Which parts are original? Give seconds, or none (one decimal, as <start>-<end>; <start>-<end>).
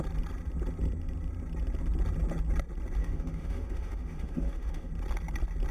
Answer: 0.0-3.0; 4.9-5.7